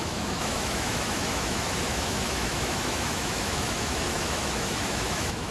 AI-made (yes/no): yes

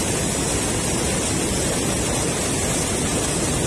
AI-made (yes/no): no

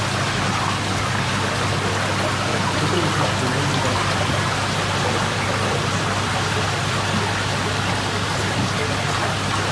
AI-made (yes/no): no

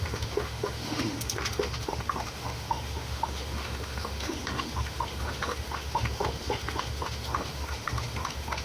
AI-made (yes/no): yes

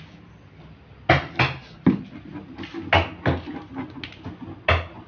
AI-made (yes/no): no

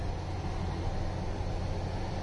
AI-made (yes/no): no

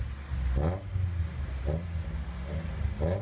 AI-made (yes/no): no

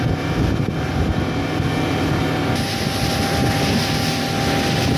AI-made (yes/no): no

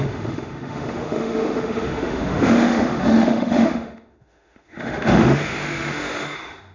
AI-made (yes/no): yes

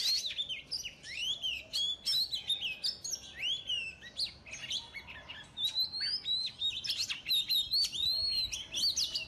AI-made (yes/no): no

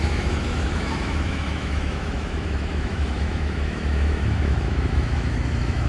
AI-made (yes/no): yes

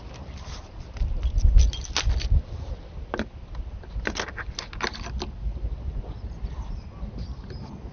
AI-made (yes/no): no